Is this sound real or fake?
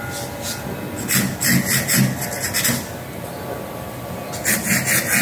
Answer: real